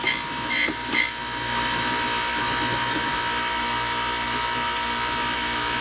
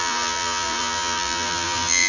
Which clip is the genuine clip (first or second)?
first